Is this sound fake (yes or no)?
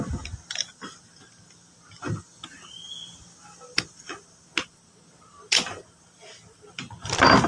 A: no